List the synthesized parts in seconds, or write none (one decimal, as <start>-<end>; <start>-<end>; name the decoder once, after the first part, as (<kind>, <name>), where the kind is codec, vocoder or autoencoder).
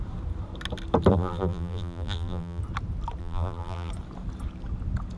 1.1-2.6 (vocoder, BigVGAN v2); 3.2-3.9